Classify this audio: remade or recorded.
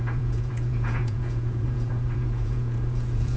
remade